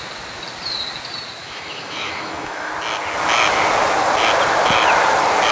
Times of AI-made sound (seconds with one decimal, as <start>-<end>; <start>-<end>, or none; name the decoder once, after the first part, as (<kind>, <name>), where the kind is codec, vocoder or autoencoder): 1.4-2.7 (autoencoder, DAC-VAE)